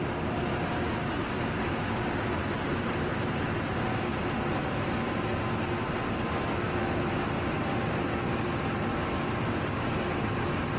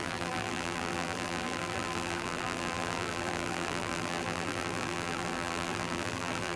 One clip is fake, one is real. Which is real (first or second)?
first